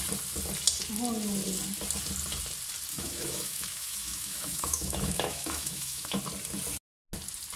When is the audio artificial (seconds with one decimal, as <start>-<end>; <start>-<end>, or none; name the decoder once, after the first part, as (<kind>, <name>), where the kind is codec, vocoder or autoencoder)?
2.9-6.2 (autoencoder, DAC-VAE)